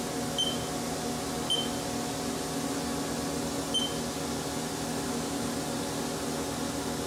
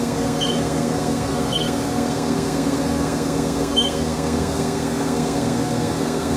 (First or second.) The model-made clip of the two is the second